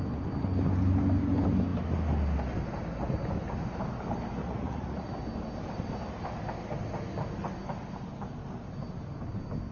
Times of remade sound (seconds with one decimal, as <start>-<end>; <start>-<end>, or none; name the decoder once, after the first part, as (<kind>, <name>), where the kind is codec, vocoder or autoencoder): 4.4-5.1 (vocoder, Vocos)